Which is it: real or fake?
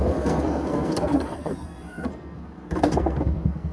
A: fake